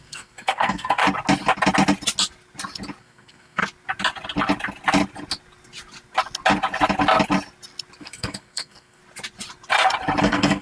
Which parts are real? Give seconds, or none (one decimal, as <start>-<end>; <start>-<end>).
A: 1.0-3.0; 3.6-8.0; 9.0-10.2